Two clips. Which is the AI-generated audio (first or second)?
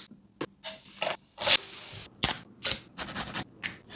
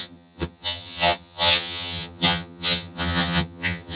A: second